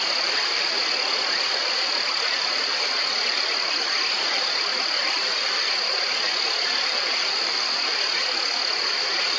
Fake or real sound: real